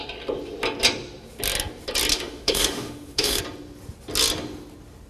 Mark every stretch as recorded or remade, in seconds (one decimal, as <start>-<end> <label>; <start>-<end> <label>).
0.0-2.1 recorded; 2.1-3.4 remade; 3.4-5.1 recorded